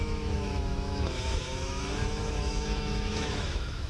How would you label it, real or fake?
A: fake